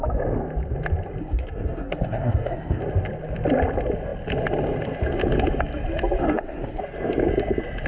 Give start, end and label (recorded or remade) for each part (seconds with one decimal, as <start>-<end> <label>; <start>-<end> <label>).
0.0-1.2 recorded; 1.2-2.8 remade; 2.8-6.2 recorded; 6.2-6.8 remade; 6.8-7.9 recorded

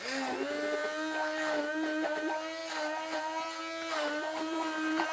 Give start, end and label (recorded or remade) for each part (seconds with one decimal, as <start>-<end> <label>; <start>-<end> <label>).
0.0-5.1 recorded